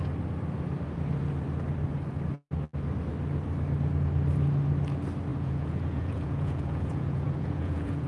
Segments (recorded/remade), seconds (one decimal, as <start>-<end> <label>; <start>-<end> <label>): 0.0-5.3 recorded; 5.3-8.1 remade